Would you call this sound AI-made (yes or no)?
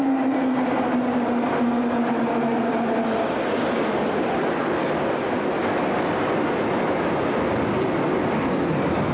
no